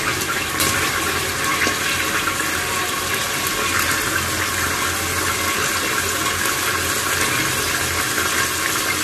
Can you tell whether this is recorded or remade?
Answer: recorded